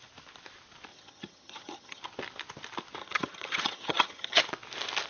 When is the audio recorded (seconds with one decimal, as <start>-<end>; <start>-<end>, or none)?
0.0-0.9; 2.0-3.0; 4.4-5.1